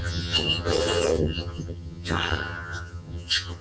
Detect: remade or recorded remade